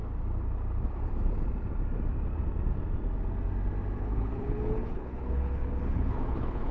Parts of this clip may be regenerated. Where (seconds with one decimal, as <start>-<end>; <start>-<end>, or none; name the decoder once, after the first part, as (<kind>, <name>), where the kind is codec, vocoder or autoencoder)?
4.0-6.7 (codec, HILCodec)